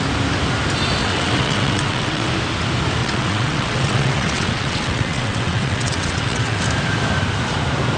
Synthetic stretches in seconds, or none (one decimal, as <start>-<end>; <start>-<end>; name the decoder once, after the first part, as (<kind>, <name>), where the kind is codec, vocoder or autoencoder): 1.0-2.3 (vocoder, WaveNeXt); 3.0-6.6